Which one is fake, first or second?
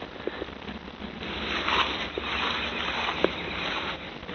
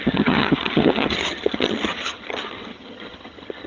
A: second